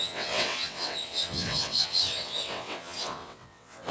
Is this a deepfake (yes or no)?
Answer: yes